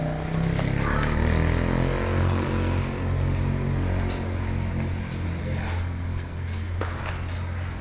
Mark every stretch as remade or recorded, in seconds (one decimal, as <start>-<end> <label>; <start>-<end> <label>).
0.0-2.2 recorded; 2.2-2.8 remade; 2.8-5.4 recorded; 5.4-6.8 remade; 6.8-7.8 recorded